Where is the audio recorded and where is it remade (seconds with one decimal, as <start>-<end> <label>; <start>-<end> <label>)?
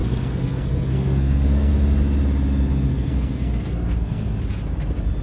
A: 0.0-1.7 remade; 1.7-2.9 recorded; 2.9-4.4 remade; 4.4-5.2 recorded